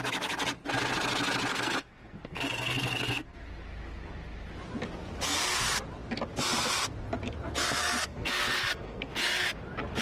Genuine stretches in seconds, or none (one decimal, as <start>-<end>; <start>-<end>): 0.0-1.5; 3.4-7.8; 9.2-10.0